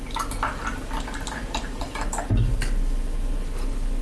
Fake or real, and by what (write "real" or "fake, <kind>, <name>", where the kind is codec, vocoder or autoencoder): real